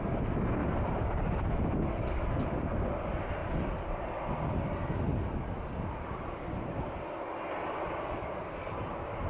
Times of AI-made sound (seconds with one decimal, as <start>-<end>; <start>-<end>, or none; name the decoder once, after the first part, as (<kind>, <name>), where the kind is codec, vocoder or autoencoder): 0.6-1.5 (vocoder, BigVGAN v2); 3.4-5.3